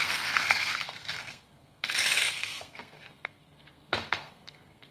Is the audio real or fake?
fake